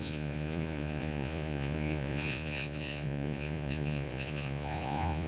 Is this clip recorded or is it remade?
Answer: remade